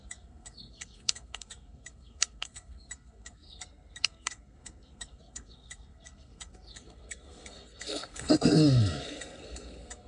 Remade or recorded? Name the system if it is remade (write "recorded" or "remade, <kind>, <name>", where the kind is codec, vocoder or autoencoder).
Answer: remade, codec, SNAC